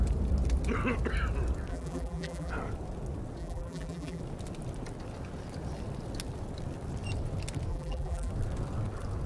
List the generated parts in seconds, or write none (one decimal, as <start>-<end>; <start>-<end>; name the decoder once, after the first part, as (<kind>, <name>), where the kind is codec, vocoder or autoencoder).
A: 1.7-2.5 (vocoder, BigVGAN v2); 3.4-4.2; 7.7-8.3